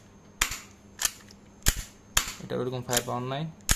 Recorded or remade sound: recorded